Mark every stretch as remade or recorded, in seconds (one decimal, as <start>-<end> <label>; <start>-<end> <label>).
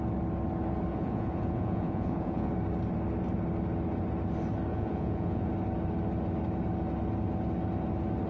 0.0-0.9 recorded; 0.9-2.5 remade; 2.5-4.7 recorded; 4.7-5.5 remade; 5.5-8.3 recorded